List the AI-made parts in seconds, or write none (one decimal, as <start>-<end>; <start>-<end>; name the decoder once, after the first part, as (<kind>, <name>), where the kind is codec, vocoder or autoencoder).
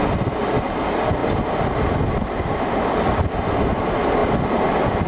none